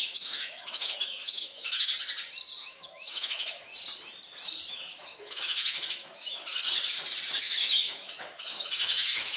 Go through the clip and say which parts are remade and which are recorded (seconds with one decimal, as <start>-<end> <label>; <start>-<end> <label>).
0.0-1.9 remade; 1.9-2.6 recorded; 2.6-3.7 remade; 3.7-4.7 recorded; 4.7-6.8 remade; 6.8-7.4 recorded; 7.4-9.4 remade